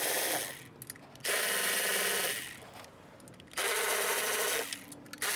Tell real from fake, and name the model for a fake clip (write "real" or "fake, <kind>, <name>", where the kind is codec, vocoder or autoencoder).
real